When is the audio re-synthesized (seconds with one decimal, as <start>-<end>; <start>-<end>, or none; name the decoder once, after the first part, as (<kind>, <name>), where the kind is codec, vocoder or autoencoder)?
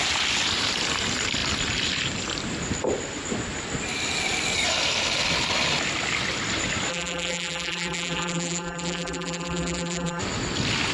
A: 6.9-10.2 (vocoder, BigVGAN v2)